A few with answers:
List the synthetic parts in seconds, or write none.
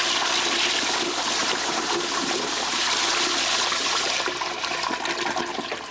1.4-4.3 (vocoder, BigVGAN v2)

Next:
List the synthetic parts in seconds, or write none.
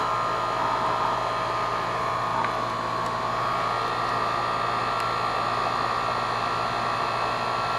none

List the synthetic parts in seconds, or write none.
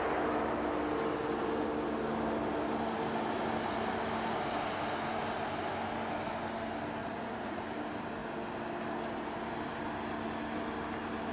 7.0-7.6 (vocoder, Vocos)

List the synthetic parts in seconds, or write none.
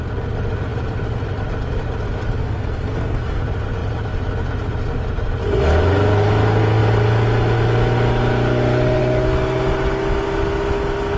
2.4-3.4 (codec, SNAC)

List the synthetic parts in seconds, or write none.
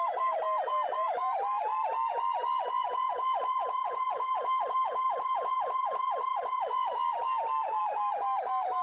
none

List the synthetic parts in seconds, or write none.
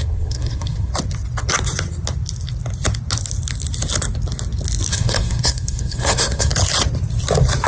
0.0-0.9 (codec, SNAC); 4.9-6.5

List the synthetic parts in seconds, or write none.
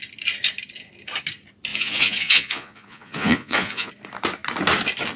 1.7-3.9 (vocoder, Vocos)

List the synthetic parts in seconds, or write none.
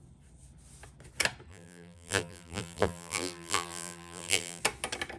1.5-4.6 (vocoder, BigVGAN v2)